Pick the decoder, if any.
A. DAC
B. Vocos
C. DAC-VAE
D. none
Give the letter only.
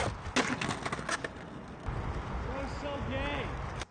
D